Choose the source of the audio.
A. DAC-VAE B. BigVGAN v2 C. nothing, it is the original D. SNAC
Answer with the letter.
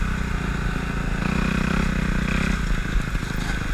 C